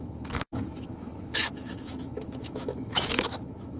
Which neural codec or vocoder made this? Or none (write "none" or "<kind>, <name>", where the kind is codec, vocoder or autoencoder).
autoencoder, DAC-VAE